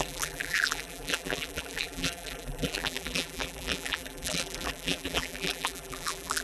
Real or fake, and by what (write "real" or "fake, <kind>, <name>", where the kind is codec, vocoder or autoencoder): fake, vocoder, BigVGAN v2